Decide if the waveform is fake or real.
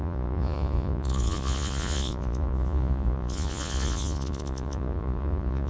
fake